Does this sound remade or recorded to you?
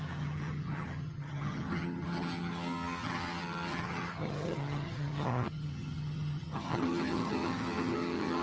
remade